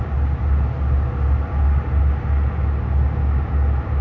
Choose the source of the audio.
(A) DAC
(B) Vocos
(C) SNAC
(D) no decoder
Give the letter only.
D